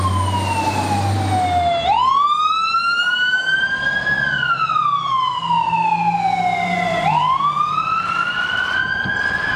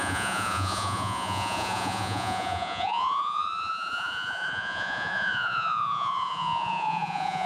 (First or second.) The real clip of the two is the first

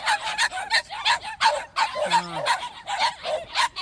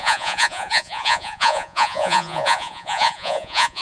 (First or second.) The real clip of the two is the first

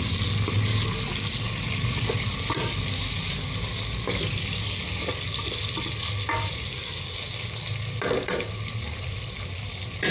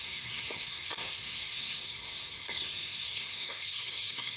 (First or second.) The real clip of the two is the first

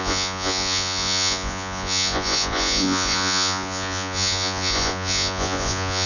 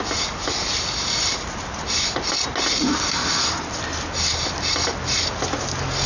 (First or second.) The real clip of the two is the second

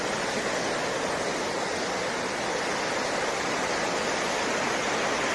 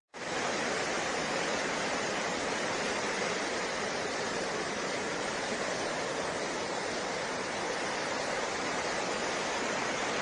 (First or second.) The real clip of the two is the first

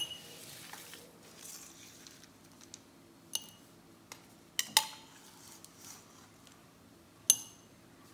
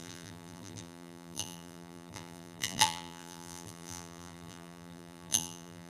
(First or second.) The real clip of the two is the first